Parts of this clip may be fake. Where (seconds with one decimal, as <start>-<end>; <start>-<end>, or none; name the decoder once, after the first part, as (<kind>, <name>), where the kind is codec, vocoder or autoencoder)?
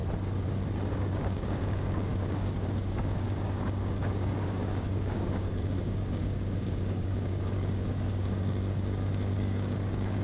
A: 0.9-10.2 (codec, DAC)